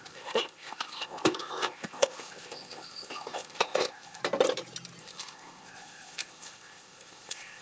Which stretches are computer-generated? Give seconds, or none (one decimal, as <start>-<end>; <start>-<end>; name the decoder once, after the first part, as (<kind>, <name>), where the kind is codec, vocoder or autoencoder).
0.0-4.2 (codec, ZipCodec); 5.0-7.6